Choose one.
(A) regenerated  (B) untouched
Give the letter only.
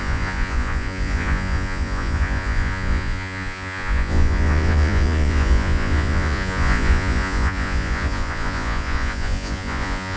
A